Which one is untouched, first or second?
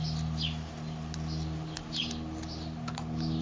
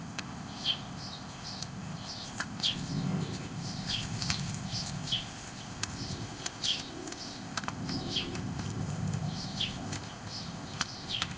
first